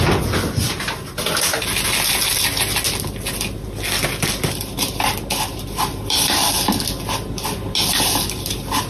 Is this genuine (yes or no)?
yes